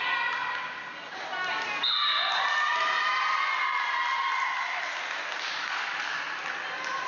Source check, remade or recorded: recorded